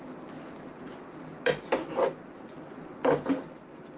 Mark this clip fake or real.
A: real